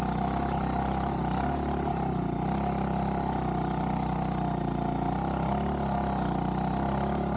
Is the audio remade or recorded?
recorded